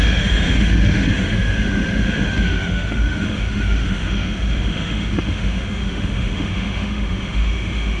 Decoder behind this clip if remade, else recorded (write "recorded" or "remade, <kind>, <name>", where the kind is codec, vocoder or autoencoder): remade, autoencoder, DAC-VAE